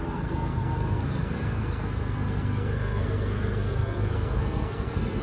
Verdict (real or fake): fake